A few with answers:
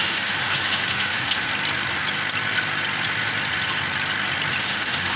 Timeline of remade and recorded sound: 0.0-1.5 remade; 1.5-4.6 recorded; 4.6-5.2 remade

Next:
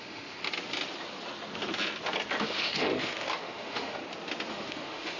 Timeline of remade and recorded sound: 0.0-0.4 remade; 0.4-2.4 recorded; 2.4-4.0 remade; 4.0-4.5 recorded; 4.5-5.2 remade